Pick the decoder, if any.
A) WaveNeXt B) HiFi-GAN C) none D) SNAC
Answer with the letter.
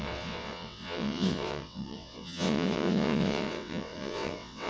A